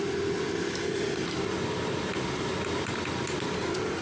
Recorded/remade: recorded